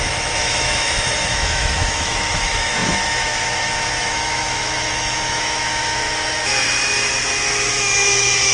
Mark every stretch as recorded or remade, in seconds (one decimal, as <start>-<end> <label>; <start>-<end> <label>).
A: 0.0-6.5 remade; 6.5-7.7 recorded; 7.7-8.5 remade